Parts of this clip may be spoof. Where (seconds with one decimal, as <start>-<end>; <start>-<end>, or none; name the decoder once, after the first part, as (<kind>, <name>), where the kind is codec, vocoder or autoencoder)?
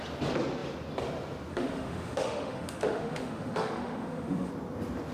1.5-4.5 (autoencoder, DAC-VAE)